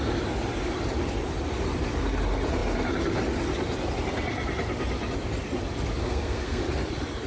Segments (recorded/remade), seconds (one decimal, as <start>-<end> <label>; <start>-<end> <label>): 0.0-6.0 recorded; 6.0-6.6 remade; 6.6-7.3 recorded

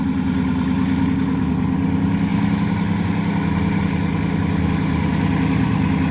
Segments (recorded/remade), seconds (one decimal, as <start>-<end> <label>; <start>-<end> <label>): 0.0-6.1 recorded